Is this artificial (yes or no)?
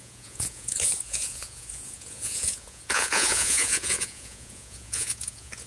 yes